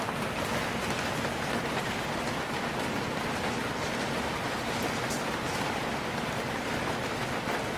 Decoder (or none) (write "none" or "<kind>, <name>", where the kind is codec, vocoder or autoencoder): none